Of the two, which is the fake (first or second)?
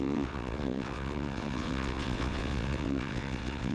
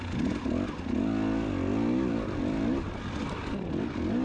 first